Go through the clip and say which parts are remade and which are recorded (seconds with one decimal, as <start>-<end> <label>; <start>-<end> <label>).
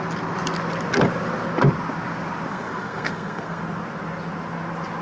0.0-2.5 recorded; 2.5-3.6 remade; 3.6-5.0 recorded